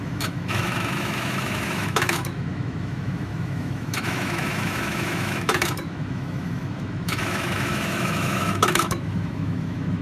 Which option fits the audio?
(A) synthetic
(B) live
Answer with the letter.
A